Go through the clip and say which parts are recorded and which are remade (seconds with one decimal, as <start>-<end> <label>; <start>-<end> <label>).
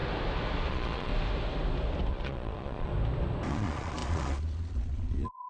0.0-0.7 recorded; 0.7-1.1 remade; 1.1-2.1 recorded; 2.1-2.9 remade; 2.9-3.5 recorded; 3.5-5.5 remade